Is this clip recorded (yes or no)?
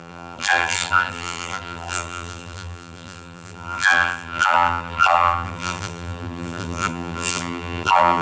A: no